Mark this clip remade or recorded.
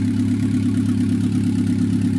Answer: recorded